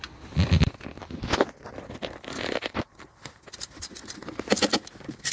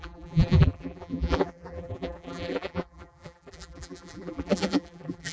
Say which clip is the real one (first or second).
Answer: first